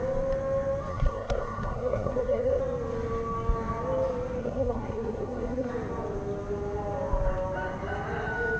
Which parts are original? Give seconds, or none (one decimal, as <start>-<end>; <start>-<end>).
0.0-0.9; 2.6-4.4; 5.7-8.6